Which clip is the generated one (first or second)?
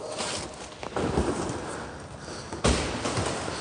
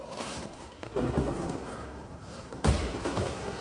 second